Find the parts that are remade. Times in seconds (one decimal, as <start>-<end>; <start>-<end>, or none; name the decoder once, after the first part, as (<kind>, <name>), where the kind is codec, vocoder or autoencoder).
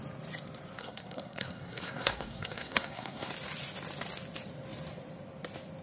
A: 0.8-3.3 (codec, SNAC)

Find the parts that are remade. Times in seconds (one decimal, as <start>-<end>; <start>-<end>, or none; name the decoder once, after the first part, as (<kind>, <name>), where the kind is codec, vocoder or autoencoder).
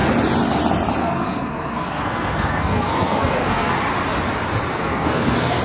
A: 1.0-3.7 (codec, SNAC); 4.7-5.6